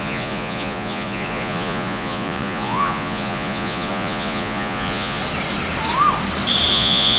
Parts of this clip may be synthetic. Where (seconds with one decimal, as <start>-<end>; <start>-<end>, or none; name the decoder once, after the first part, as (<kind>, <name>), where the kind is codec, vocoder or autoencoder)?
0.0-5.2 (vocoder, Vocos); 6.7-7.2